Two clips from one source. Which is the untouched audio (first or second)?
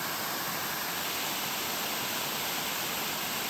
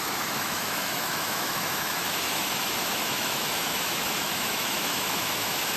first